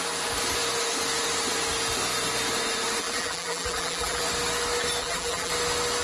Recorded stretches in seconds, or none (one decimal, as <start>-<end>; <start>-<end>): 0.0-3.0; 4.2-5.0; 5.5-6.0